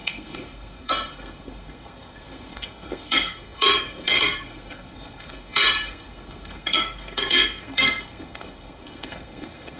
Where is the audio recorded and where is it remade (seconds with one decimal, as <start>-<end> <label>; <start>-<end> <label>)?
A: 0.0-9.8 remade

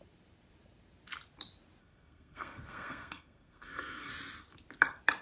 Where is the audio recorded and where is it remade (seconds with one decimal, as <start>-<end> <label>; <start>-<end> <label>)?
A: 0.0-1.8 recorded; 1.8-4.1 remade; 4.1-5.2 recorded

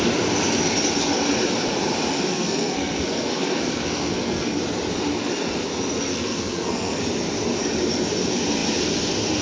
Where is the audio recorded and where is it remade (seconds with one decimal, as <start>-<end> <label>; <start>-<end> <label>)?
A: 0.0-2.3 recorded; 2.3-4.6 remade; 4.6-6.1 recorded; 6.1-7.0 remade; 7.0-9.4 recorded